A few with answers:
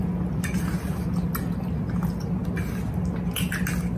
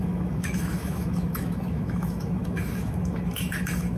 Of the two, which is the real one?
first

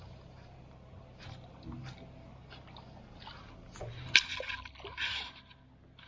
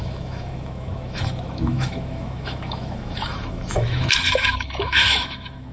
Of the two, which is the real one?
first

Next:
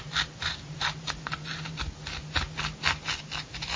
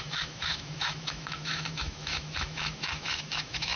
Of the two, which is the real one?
first